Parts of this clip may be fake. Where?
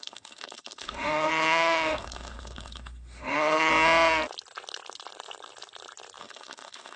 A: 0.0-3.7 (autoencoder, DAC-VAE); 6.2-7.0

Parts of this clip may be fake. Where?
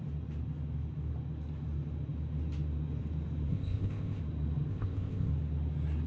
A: 3.5-4.2 (codec, ZipCodec); 4.7-5.3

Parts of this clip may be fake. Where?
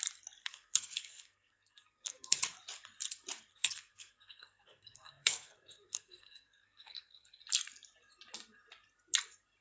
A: 0.4-2.4 (codec, SNAC); 3.5-7.4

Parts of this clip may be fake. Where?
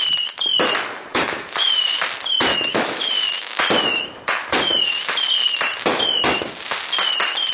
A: 1.1-1.7 (autoencoder, DAC-VAE); 2.5-3.1